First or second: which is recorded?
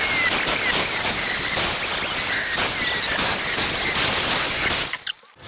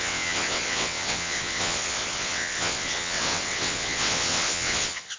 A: first